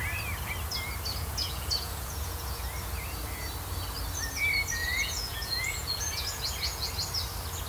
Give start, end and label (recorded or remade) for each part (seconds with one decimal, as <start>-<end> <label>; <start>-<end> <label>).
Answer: 0.0-1.2 recorded; 1.2-2.6 remade; 2.6-4.8 recorded; 4.8-6.9 remade; 6.9-7.7 recorded